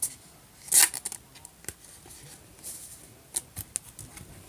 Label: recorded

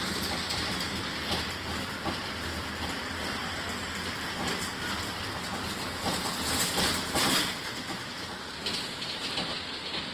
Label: remade